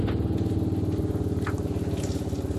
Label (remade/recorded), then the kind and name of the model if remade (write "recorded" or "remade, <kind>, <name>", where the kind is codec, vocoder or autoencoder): recorded